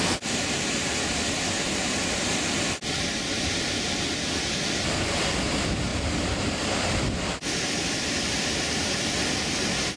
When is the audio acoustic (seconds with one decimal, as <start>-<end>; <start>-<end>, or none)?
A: 0.0-10.0